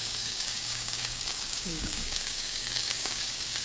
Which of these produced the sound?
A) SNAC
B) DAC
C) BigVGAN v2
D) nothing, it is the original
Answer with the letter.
B